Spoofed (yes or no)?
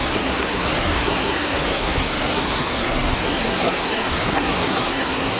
yes